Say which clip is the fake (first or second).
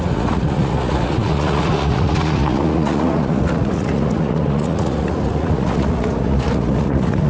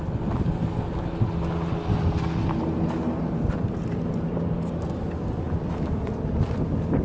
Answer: first